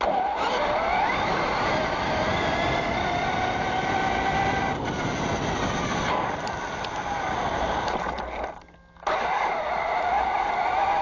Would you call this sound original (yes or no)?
yes